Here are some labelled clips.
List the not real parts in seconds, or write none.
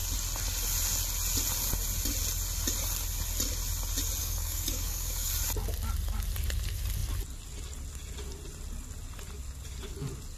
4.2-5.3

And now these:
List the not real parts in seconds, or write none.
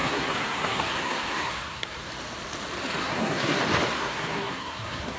0.0-2.1; 3.0-3.6; 4.0-5.2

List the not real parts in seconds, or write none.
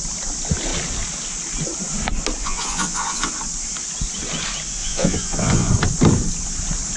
2.4-3.3; 4.8-5.7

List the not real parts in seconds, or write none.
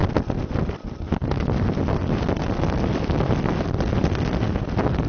none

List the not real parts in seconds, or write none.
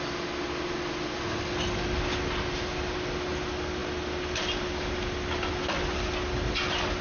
none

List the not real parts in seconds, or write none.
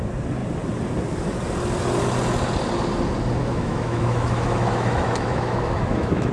3.4-6.3